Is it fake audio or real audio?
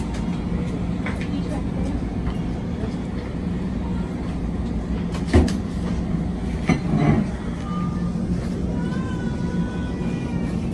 real